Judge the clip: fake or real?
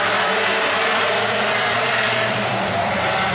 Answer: fake